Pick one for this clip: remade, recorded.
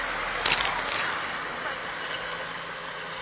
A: recorded